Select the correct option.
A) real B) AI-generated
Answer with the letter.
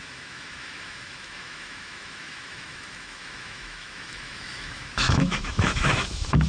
B